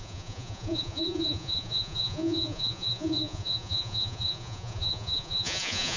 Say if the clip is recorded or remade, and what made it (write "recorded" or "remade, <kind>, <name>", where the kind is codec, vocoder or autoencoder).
remade, vocoder, Vocos